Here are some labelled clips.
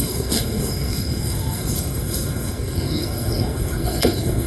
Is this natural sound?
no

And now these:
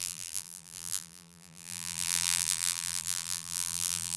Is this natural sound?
no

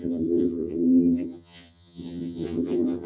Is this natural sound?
no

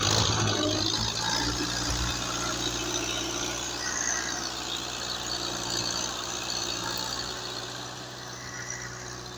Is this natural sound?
yes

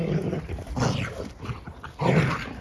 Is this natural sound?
yes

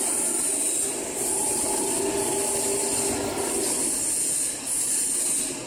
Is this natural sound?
yes